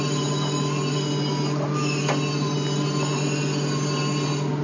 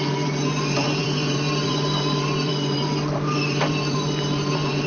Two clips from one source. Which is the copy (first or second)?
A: second